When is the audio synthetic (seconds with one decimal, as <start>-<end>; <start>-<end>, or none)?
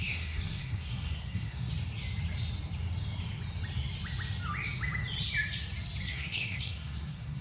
0.0-1.7; 6.1-7.4